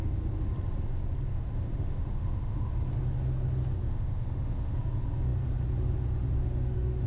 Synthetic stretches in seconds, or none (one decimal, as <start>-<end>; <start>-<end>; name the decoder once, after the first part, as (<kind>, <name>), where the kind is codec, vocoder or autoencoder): 1.3-2.7 (autoencoder, DAC-VAE); 3.8-4.8; 6.4-7.1